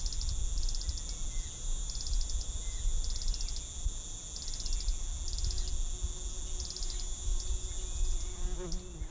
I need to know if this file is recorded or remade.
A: recorded